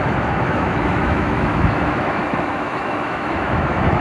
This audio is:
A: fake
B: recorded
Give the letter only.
A